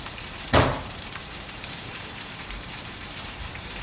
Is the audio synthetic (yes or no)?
yes